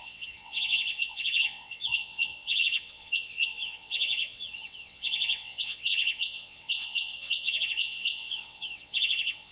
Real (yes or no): no